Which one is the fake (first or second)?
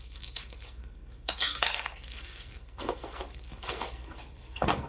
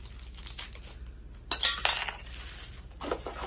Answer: first